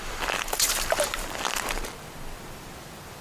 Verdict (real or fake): fake